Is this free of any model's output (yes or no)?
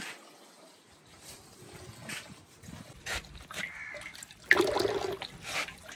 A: yes